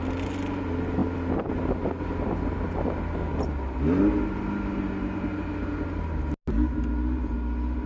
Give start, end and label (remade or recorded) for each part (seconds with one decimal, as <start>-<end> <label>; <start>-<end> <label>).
0.0-7.9 recorded